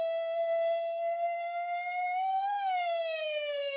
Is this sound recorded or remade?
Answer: remade